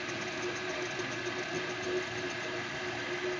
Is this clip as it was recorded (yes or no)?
yes